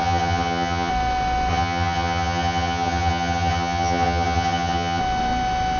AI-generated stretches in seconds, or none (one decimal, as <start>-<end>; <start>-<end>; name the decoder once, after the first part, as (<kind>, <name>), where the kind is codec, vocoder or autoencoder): 0.0-0.9 (vocoder, HiFi-GAN); 1.5-5.0